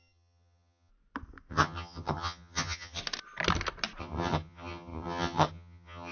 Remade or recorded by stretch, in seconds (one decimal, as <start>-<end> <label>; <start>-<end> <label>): 0.0-0.9 remade; 0.9-1.5 recorded; 1.5-3.0 remade; 3.0-4.0 recorded; 4.0-6.1 remade